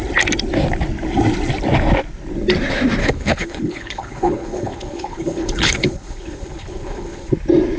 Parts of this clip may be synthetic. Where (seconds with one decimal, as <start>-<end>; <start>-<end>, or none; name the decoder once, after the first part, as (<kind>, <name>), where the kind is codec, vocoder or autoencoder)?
3.0-7.3 (codec, HILCodec)